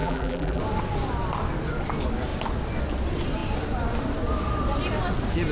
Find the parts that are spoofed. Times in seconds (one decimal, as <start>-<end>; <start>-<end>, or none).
0.0-0.6